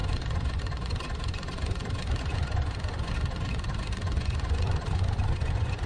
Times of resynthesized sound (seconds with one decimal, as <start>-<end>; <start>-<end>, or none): 0.0-5.9